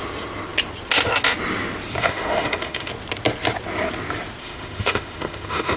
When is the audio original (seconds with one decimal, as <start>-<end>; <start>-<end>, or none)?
0.0-2.0; 2.9-4.4